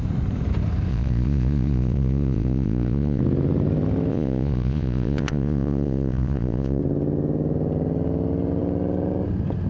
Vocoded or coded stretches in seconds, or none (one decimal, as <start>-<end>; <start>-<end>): 0.9-3.2; 4.1-6.8